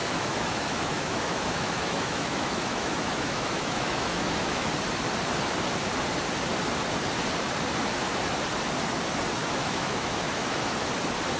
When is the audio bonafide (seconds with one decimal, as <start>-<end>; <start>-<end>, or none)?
4.7-9.4; 10.7-11.4